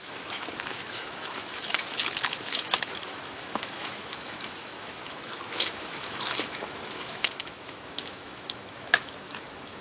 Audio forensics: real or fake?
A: fake